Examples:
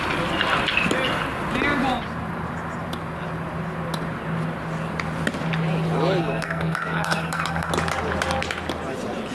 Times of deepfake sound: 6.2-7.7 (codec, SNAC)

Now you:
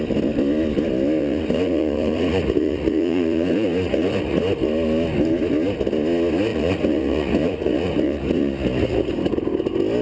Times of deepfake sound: 1.2-4.4 (vocoder, Vocos); 6.5-9.1

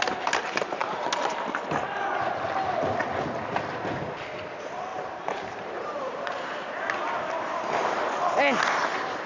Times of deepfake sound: 0.8-1.4 (vocoder, BigVGAN v2); 4.9-6.7

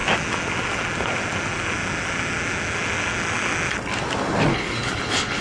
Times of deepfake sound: 4.5-5.4 (codec, HILCodec)

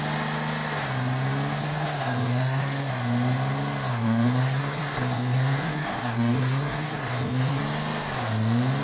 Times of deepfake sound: 1.6-2.9 (codec, SNAC); 3.9-7.6

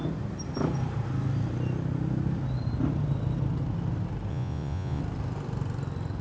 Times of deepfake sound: 4.3-5.0 (vocoder, Vocos)

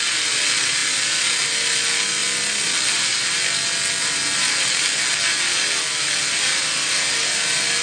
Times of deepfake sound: none

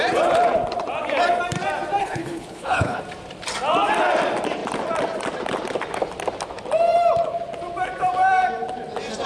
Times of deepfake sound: 2.0-3.0 (codec, HILCodec)